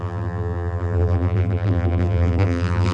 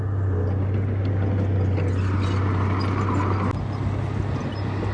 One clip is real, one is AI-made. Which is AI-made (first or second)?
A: first